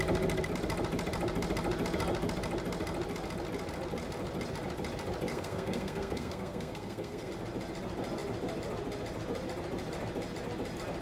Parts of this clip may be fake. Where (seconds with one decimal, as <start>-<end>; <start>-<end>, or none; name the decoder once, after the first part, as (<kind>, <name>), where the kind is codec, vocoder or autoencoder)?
5.3-7.3 (codec, SNAC)